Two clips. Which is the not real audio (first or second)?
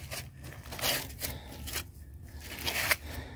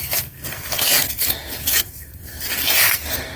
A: second